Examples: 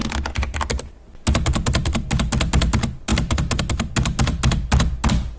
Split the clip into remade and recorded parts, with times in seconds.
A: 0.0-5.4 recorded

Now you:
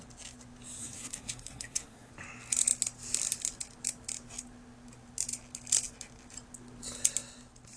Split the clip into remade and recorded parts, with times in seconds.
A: 0.0-0.8 recorded; 0.8-2.1 remade; 2.1-7.8 recorded

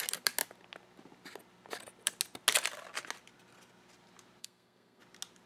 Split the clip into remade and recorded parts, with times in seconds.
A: 0.0-4.4 recorded; 4.4-5.0 remade; 5.0-5.5 recorded

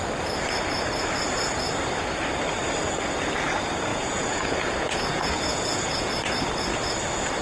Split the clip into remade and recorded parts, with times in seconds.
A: 0.0-3.9 recorded; 3.9-6.1 remade; 6.1-7.4 recorded

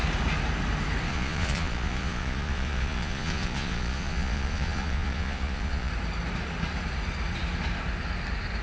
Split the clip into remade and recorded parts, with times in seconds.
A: 0.0-1.1 recorded; 1.1-5.9 remade; 5.9-8.6 recorded